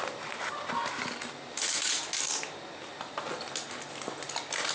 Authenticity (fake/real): real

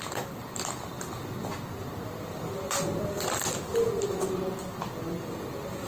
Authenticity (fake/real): real